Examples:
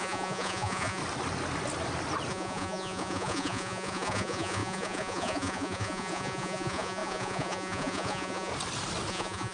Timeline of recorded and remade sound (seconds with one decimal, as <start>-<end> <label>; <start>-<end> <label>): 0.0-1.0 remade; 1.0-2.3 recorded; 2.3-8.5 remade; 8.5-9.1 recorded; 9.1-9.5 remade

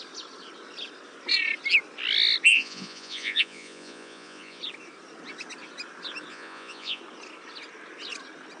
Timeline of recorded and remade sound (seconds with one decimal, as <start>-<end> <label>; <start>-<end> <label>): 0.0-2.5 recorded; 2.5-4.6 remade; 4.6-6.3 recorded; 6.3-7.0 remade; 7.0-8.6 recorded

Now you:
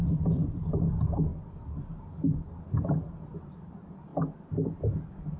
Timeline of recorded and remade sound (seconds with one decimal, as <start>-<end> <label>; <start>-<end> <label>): 0.0-1.3 remade; 1.3-1.8 recorded; 1.8-4.1 remade; 4.1-4.8 recorded; 4.8-5.4 remade